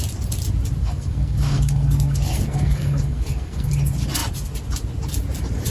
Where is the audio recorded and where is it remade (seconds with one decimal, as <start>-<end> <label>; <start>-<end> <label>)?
0.0-0.8 recorded; 0.8-3.7 remade; 3.7-5.7 recorded